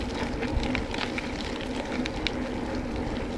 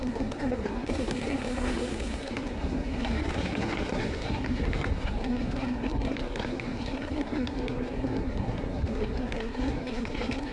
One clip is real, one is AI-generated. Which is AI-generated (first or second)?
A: second